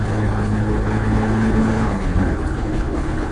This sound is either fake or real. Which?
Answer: fake